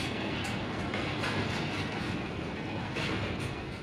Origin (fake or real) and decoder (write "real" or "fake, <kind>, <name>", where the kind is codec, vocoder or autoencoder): fake, codec, SNAC